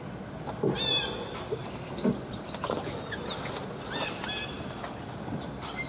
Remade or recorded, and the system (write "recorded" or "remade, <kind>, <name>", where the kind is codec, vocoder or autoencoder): recorded